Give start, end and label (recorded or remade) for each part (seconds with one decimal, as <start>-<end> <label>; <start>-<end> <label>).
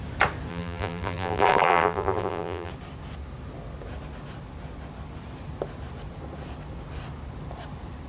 0.0-0.5 recorded; 0.5-2.7 remade; 2.7-8.1 recorded